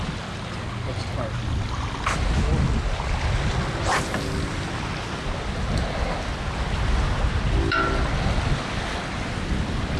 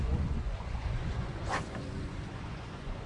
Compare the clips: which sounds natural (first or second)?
first